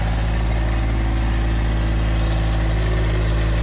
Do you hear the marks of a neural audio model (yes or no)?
no